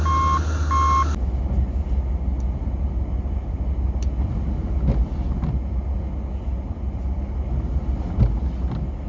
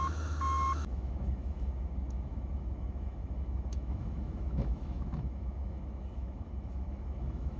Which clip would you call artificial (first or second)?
second